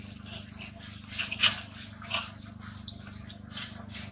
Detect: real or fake real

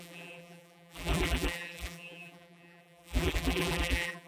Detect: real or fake fake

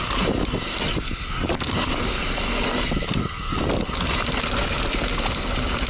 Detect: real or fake real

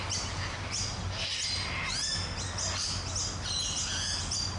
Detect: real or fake real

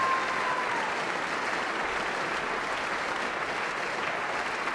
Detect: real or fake real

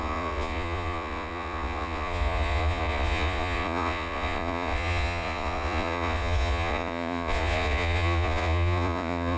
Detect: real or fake fake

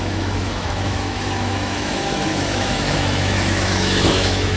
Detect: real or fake fake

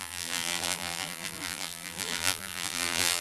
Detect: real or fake fake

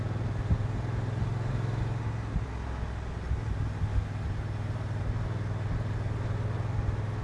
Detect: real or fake real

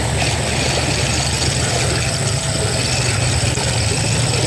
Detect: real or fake real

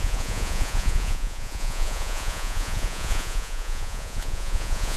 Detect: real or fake fake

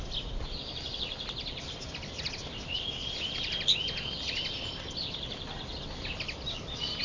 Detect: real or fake real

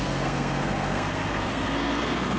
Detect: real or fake fake